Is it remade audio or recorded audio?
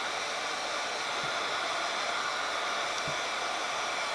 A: recorded